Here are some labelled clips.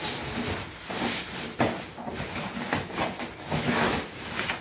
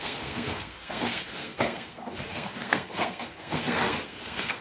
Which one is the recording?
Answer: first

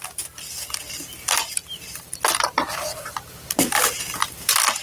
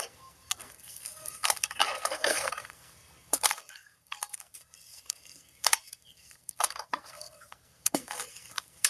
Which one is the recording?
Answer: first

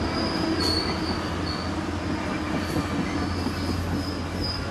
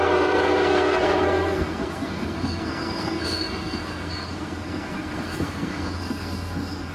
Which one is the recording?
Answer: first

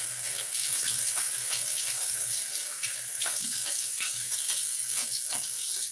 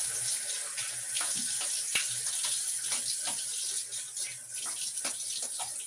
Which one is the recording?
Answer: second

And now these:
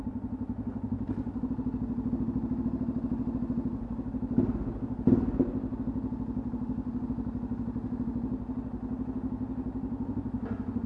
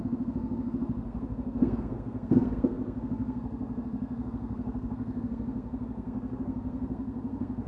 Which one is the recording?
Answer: first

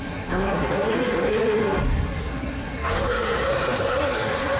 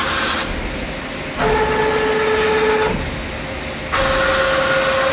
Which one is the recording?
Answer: second